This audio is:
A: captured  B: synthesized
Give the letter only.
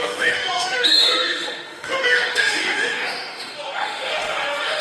B